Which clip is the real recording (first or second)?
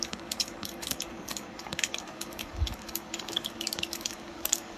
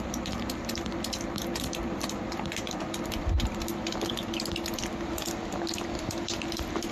second